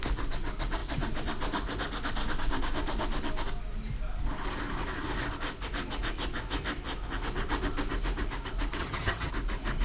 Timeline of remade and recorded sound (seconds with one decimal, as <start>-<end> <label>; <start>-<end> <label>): 0.0-8.8 recorded; 8.8-9.3 remade; 9.3-9.8 recorded